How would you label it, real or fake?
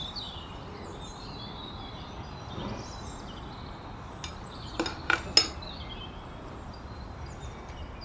real